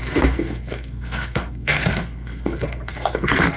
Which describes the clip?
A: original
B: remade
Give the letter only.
B